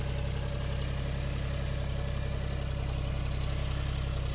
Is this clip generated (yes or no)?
no